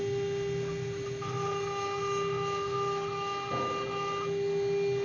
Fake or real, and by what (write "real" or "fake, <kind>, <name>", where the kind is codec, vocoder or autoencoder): real